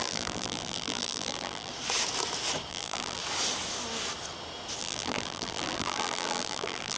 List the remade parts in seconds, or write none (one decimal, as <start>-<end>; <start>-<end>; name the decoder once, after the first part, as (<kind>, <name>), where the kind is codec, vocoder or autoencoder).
0.0-1.7 (vocoder, BigVGAN v2); 2.7-3.2; 4.8-7.0